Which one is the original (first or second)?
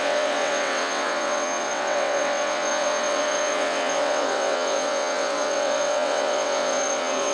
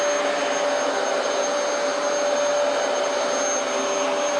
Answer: second